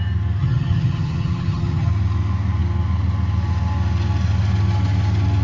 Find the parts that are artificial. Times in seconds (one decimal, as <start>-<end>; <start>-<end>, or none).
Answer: 0.4-1.9